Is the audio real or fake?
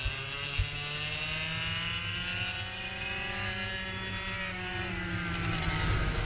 real